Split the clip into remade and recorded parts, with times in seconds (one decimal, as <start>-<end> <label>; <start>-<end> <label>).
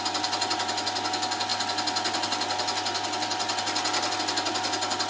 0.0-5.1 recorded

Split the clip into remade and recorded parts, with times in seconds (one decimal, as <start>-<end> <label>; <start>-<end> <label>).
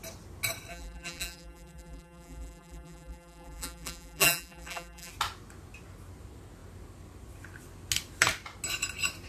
0.0-0.7 recorded; 0.7-5.1 remade; 5.1-9.3 recorded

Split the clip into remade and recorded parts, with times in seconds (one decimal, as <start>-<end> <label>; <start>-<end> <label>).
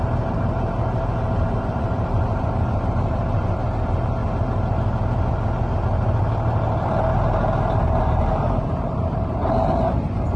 0.0-4.2 remade; 4.2-8.0 recorded; 8.0-10.4 remade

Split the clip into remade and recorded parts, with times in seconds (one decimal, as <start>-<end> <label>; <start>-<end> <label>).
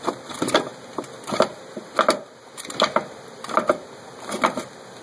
0.0-5.0 recorded